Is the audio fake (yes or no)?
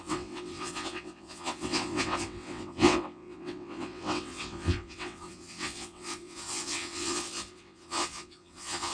yes